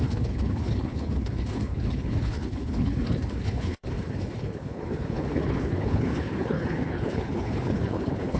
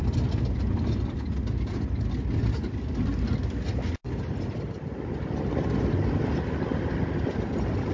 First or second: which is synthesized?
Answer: first